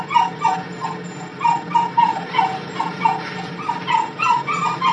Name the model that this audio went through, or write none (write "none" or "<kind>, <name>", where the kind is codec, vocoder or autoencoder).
none